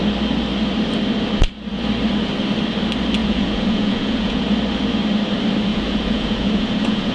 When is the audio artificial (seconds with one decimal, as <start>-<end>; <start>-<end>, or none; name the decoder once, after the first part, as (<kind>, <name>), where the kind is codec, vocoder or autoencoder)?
3.2-4.4 (vocoder, Vocos); 5.7-7.1